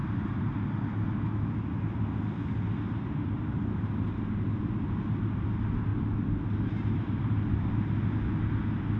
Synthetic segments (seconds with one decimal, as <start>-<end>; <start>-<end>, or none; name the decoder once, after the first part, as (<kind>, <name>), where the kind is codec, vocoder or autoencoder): 5.9-7.7 (vocoder, BigVGAN v2)